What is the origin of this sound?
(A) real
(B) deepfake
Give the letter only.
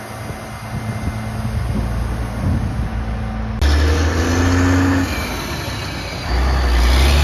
A